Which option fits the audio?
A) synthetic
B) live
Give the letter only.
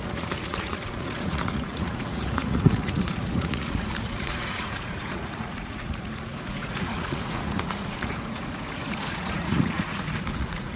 A